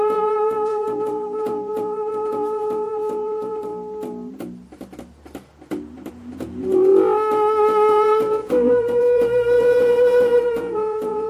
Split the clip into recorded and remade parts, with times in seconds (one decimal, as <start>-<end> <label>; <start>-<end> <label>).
0.0-3.7 remade; 3.7-6.1 recorded; 6.1-6.9 remade; 6.9-7.9 recorded; 7.9-11.3 remade